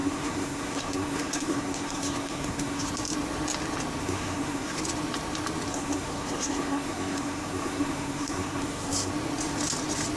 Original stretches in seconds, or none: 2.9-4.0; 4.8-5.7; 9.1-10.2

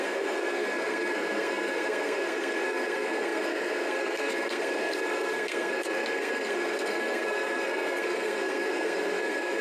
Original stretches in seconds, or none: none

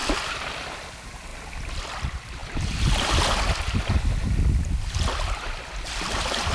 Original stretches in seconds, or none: 1.3-1.8